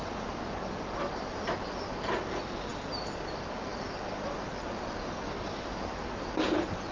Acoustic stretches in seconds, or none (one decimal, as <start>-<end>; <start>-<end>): 0.0-6.9